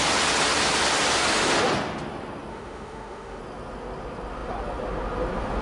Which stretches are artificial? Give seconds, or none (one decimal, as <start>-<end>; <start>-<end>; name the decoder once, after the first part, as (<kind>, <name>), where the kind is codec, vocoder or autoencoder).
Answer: 2.5-3.4 (autoencoder, DAC-VAE)